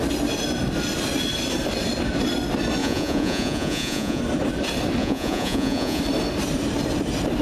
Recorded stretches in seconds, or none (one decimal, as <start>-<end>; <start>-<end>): 0.0-2.8; 4.2-5.0; 6.0-7.4